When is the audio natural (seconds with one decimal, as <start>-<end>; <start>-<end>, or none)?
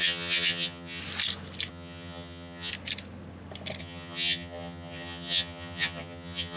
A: 1.0-1.7; 2.7-3.8